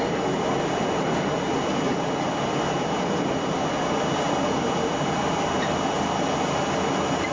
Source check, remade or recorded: recorded